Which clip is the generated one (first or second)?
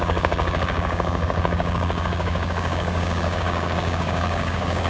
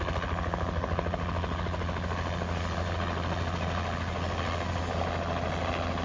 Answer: first